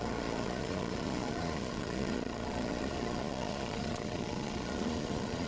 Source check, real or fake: fake